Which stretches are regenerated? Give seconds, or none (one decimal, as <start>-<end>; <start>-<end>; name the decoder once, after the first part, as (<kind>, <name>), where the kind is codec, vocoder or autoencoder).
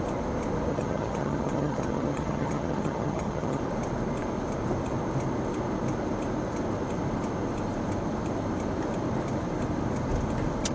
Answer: 0.7-3.6 (vocoder, HiFi-GAN)